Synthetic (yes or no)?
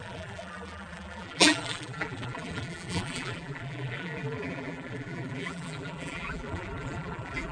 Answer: yes